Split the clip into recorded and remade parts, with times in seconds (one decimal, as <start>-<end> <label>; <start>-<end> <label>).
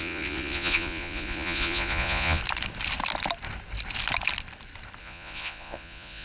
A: 0.0-2.4 remade; 2.4-5.0 recorded; 5.0-6.2 remade